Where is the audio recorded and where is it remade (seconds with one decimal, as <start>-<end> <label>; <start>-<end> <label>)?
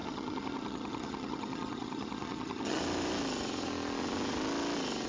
0.0-2.8 remade; 2.8-5.1 recorded